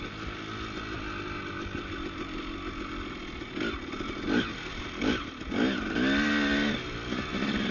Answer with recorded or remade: recorded